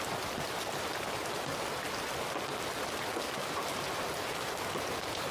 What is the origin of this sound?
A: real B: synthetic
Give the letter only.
A